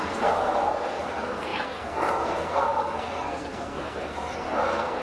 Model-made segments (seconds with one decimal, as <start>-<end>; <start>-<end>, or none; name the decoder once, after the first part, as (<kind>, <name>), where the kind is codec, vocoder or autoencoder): 0.0-5.0 (codec, SNAC)